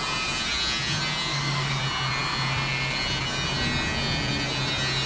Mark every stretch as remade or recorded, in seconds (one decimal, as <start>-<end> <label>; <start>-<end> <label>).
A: 0.0-1.3 recorded; 1.3-1.8 remade; 1.8-5.1 recorded